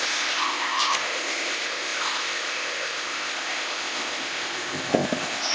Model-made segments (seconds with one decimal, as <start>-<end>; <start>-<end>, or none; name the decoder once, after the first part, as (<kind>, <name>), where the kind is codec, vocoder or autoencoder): 0.0-5.5 (codec, ZipCodec)

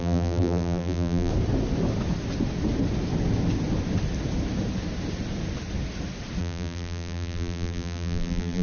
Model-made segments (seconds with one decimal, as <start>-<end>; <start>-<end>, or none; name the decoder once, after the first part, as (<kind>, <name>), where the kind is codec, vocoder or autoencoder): 0.0-1.3 (vocoder, BigVGAN v2); 6.4-8.6

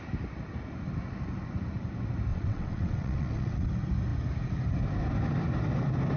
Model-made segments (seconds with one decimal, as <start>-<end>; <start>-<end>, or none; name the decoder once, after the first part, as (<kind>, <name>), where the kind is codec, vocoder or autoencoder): 2.3-3.6 (vocoder, WaveNeXt)

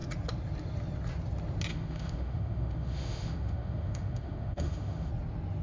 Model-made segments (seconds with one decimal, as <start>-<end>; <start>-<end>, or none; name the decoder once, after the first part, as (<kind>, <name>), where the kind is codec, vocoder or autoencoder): 1.7-5.1 (autoencoder, DAC-VAE)

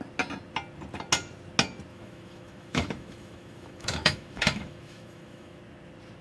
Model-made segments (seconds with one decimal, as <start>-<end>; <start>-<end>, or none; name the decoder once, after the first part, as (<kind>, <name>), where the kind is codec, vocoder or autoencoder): 1.9-5.6 (autoencoder, DAC-VAE)

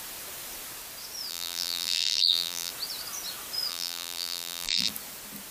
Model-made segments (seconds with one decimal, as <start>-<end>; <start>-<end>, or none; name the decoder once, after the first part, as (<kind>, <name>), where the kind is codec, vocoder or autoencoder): 1.3-2.7 (vocoder, BigVGAN v2); 3.7-4.9

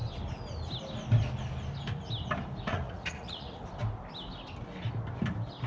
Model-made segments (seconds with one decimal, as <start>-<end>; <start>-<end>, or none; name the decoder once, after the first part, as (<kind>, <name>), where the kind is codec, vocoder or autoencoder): 2.7-3.6 (vocoder, Vocos)